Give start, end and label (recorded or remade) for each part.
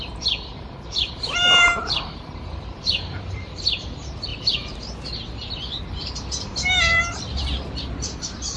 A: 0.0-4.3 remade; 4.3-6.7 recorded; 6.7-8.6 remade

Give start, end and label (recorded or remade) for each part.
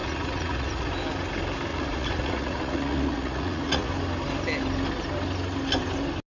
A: 0.0-0.9 remade; 0.9-1.7 recorded; 1.7-3.9 remade; 3.9-6.3 recorded